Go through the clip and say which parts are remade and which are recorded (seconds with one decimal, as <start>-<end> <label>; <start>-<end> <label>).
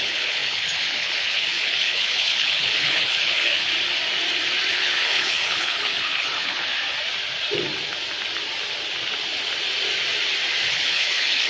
0.0-3.7 remade; 3.7-4.7 recorded; 4.7-6.7 remade; 6.7-10.7 recorded; 10.7-11.5 remade